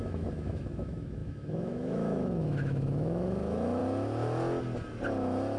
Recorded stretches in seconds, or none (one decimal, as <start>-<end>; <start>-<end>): 3.8-5.6